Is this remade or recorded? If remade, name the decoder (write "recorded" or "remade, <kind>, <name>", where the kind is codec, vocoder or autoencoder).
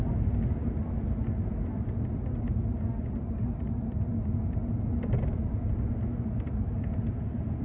recorded